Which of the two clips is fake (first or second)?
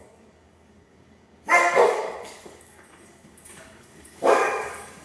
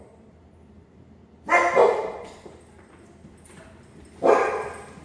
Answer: first